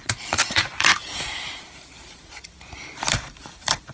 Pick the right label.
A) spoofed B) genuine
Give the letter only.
A